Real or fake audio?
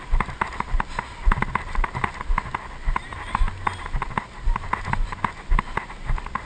real